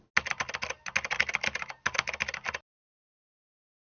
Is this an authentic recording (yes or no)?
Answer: yes